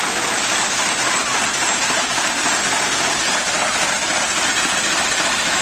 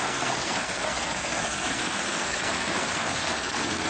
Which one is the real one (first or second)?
first